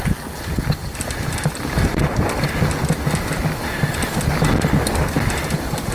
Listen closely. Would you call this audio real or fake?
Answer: real